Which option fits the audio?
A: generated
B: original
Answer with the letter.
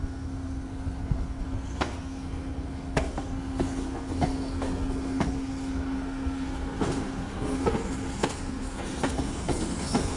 A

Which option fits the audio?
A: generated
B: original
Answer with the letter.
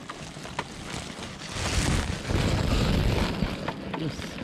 B